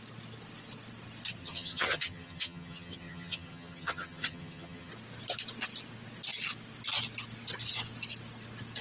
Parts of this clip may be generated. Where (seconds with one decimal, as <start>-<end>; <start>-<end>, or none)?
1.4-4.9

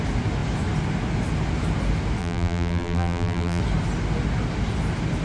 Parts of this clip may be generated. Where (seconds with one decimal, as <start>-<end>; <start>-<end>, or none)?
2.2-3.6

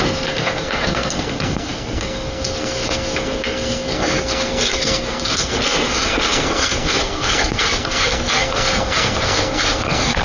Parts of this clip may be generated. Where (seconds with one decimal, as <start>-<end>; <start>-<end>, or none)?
0.0-10.2